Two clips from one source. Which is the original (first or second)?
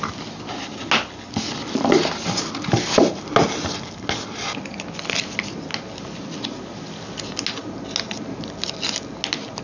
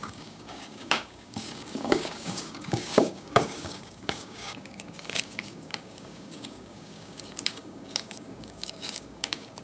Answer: first